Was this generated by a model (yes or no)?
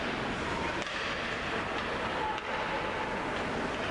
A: no